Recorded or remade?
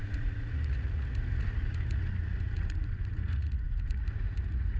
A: remade